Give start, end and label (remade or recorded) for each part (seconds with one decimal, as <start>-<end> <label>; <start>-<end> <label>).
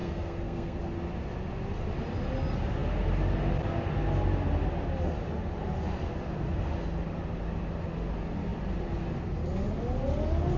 0.0-0.8 remade; 0.8-10.6 recorded